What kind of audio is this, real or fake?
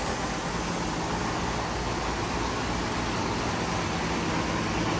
real